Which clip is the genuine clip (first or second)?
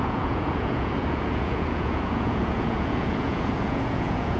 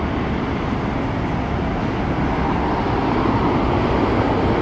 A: second